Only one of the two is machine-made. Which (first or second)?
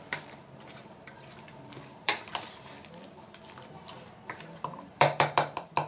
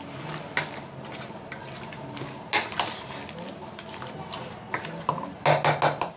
first